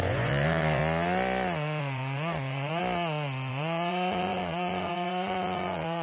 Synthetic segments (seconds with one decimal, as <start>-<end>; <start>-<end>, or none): 0.0-0.8; 1.8-2.8; 3.5-6.0